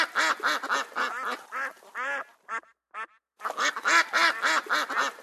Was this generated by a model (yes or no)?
no